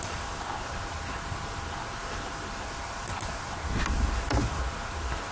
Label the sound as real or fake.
real